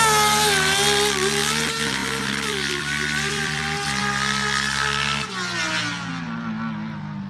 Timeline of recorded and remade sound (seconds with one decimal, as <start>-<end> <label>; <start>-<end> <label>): 0.0-2.0 recorded; 2.0-3.6 remade; 3.6-7.3 recorded